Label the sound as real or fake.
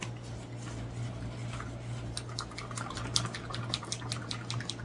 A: real